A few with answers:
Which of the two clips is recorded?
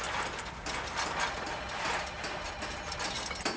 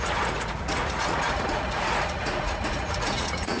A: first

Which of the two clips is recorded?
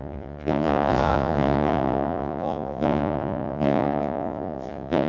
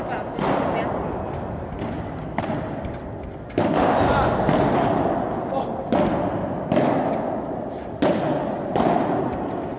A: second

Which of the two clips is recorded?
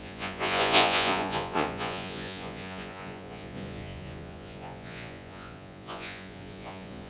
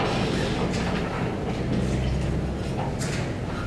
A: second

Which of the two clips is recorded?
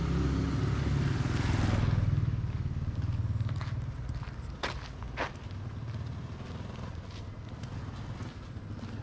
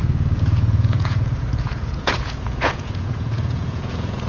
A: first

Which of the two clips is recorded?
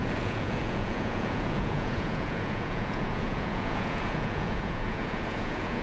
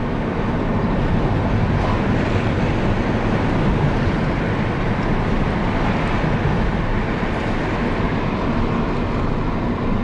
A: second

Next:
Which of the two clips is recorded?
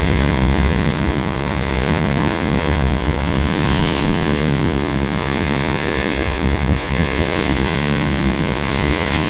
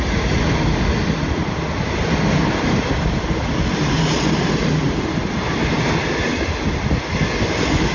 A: second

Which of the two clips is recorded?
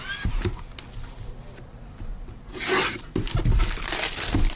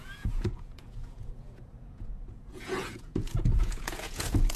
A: first